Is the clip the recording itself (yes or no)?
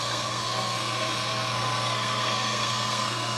no